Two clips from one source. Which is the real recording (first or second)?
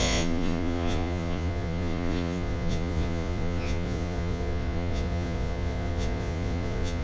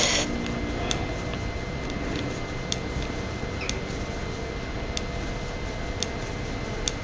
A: second